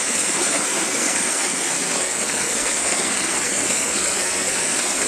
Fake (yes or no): yes